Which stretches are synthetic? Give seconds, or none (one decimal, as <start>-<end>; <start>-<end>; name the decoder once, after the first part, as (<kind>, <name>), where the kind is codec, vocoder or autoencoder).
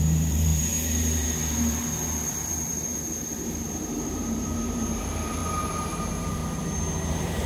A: 0.0-6.4 (vocoder, BigVGAN v2); 7.1-7.5